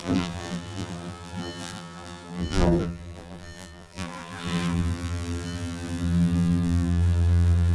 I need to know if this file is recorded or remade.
remade